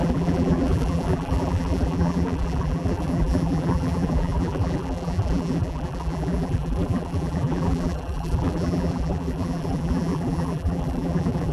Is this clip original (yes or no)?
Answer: no